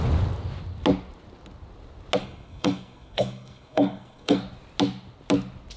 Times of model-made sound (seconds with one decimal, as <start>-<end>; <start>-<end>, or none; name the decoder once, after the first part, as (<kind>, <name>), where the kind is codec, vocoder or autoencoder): 2.2-4.4 (codec, SNAC)